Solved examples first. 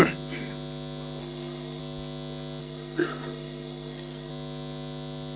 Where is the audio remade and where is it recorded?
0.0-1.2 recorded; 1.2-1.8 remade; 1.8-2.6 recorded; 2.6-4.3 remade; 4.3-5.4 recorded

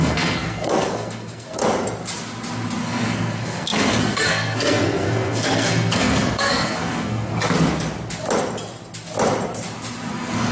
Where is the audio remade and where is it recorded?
0.0-1.6 remade; 1.6-2.8 recorded; 2.8-7.3 remade; 7.3-10.1 recorded; 10.1-10.5 remade

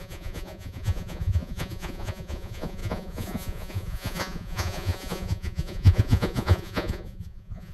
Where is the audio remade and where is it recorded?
0.0-7.7 remade

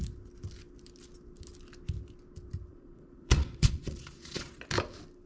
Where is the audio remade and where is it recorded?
0.0-2.7 recorded; 2.7-4.6 remade; 4.6-5.3 recorded